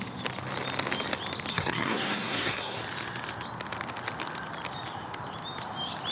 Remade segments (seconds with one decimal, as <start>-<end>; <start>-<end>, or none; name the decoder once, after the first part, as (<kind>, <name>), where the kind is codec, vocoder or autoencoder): 1.5-2.8 (codec, SNAC)